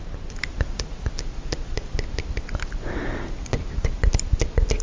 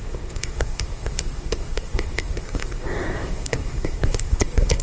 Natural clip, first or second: first